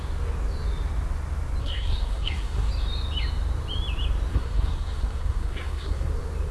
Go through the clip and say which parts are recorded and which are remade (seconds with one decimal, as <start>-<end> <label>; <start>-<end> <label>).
0.0-1.6 recorded; 1.6-2.7 remade; 2.7-4.3 recorded; 4.3-6.1 remade; 6.1-6.5 recorded